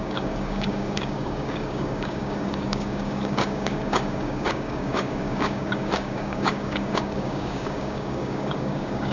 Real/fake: fake